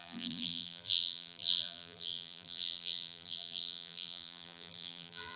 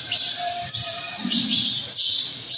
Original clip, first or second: second